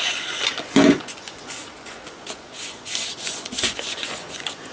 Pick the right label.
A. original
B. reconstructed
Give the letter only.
B